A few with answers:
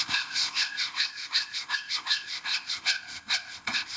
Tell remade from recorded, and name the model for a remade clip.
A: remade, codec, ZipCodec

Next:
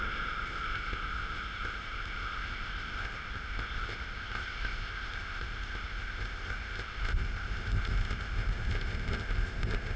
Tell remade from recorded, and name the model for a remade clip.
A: remade, codec, ZipCodec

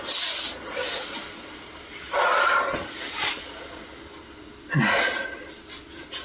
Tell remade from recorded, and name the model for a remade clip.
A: recorded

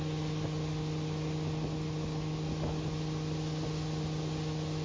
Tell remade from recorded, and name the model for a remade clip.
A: recorded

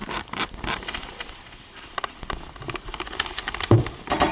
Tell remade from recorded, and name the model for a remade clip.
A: recorded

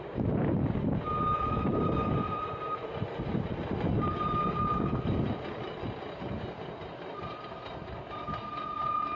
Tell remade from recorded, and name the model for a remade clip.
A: recorded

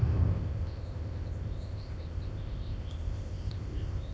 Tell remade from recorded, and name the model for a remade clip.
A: remade, codec, ZipCodec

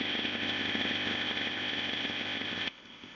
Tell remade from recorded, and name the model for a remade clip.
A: remade, codec, ZipCodec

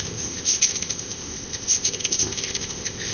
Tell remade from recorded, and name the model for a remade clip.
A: remade, codec, ZipCodec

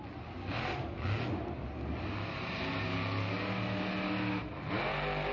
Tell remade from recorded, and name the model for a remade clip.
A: recorded